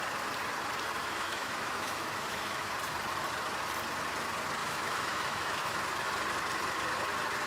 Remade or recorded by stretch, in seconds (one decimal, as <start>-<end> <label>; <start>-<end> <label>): 0.0-1.0 recorded; 1.0-2.7 remade; 2.7-4.6 recorded; 4.6-5.8 remade; 5.8-7.5 recorded